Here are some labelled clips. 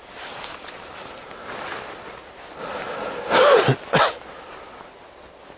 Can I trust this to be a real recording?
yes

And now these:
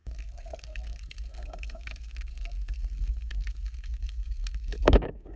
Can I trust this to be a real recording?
no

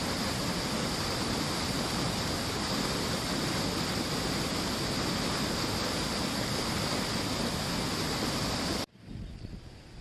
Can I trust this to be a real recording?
yes